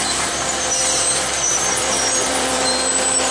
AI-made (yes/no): yes